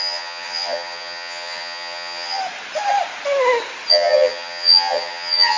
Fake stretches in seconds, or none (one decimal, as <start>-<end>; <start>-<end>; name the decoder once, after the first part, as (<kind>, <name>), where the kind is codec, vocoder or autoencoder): 0.0-2.4 (vocoder, HiFi-GAN); 3.9-5.6

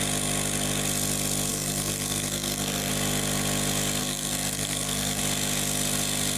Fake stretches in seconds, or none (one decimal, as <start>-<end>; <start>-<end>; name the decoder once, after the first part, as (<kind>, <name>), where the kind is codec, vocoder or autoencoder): 1.5-2.9 (codec, SNAC); 4.0-5.2

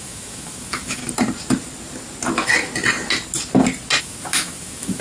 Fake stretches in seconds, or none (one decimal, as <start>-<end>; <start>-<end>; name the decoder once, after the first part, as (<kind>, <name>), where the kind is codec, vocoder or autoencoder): 0.0-1.0 (autoencoder, DAC-VAE); 4.0-5.0

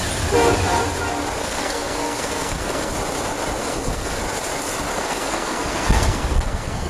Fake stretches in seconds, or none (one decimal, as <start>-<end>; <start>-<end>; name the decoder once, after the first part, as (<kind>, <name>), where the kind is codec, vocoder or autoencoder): 1.4-2.9 (codec, SNAC); 3.6-4.2; 4.9-6.9

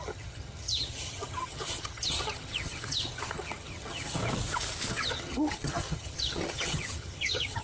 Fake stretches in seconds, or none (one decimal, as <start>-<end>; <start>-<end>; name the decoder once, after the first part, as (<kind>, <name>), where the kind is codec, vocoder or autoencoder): 0.0-4.2 (vocoder, HiFi-GAN); 4.9-7.6